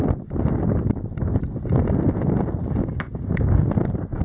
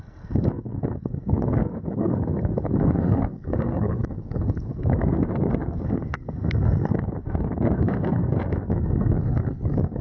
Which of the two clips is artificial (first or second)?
second